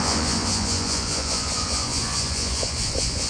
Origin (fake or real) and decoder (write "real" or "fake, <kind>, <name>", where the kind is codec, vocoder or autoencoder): fake, vocoder, Vocos